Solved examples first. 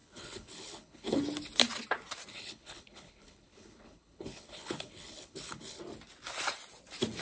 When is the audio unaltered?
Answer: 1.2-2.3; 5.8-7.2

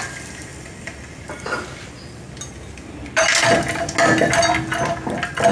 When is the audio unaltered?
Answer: 0.0-5.5

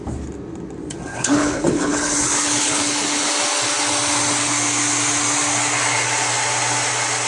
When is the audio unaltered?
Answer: 0.0-1.1; 3.3-7.3

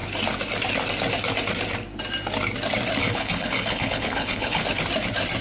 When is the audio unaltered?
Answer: 0.0-3.0; 4.6-5.4

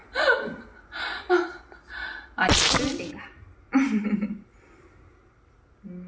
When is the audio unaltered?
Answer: 0.0-6.1